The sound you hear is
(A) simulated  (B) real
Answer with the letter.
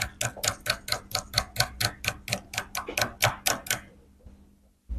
B